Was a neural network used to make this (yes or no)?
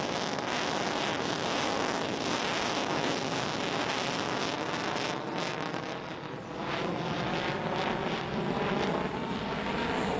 no